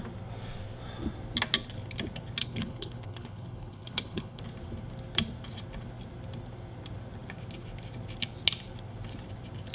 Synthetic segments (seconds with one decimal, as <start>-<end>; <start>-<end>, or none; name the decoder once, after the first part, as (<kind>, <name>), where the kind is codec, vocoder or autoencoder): 2.4-4.4 (codec, HILCodec)